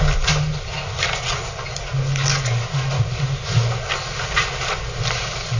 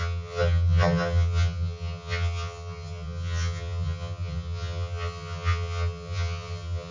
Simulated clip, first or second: second